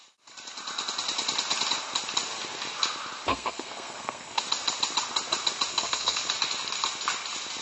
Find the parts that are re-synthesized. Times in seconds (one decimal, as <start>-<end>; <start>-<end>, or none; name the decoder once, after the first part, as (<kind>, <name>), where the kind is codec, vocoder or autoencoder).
3.3-4.4 (codec, SNAC); 5.7-6.3